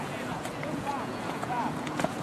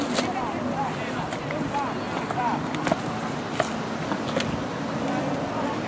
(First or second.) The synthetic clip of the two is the first